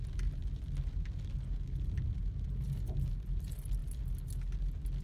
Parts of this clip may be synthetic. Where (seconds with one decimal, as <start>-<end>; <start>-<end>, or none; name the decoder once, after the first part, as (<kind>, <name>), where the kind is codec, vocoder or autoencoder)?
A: none